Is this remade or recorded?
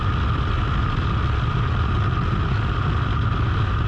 recorded